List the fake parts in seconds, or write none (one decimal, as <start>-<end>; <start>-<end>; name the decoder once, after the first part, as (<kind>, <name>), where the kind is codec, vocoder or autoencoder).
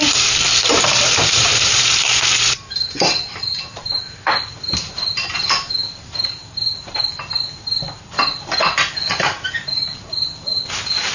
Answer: 0.0-11.1 (vocoder, BigVGAN v2)